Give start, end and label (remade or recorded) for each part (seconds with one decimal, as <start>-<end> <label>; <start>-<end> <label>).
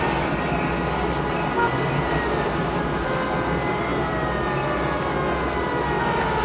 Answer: 0.0-6.4 recorded